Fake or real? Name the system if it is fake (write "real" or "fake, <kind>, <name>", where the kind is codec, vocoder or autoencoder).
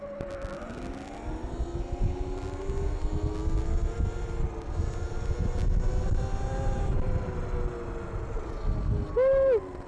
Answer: real